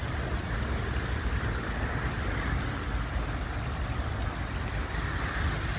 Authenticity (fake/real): real